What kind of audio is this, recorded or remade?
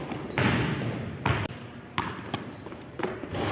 remade